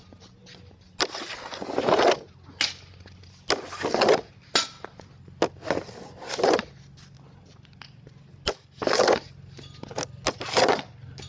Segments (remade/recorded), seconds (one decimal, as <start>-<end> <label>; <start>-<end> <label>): 0.0-11.3 recorded